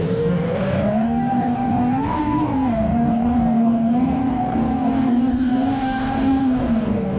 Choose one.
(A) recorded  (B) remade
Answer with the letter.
B